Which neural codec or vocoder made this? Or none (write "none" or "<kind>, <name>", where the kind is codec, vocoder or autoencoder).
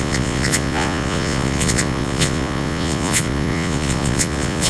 vocoder, Vocos